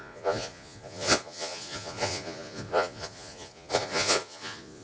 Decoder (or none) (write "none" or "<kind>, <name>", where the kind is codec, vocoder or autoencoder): vocoder, Vocos